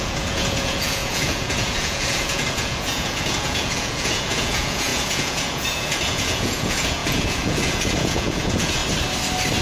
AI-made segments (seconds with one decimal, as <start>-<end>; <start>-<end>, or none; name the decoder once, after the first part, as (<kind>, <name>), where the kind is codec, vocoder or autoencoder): 0.0-8.8 (vocoder, Vocos)